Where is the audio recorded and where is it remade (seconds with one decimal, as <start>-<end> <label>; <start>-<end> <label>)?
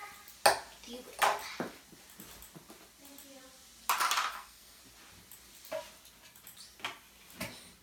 0.0-4.3 recorded; 4.3-4.8 remade; 4.8-7.8 recorded